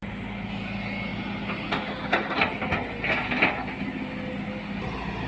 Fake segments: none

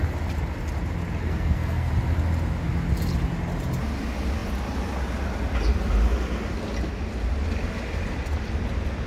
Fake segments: 1.2-1.9 (codec, SNAC)

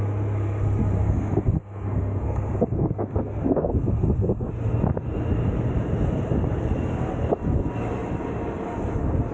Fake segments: 1.0-4.5 (codec, SNAC)

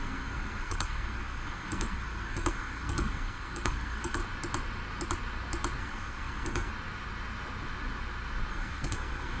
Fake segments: 0.0-4.2 (codec, SNAC); 5.8-6.7; 8.5-9.4

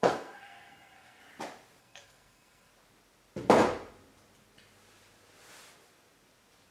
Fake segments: 0.0-1.2 (codec, SNAC); 1.8-2.7

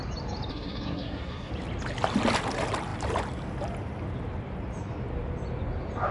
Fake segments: 0.5-1.5 (codec, SNAC)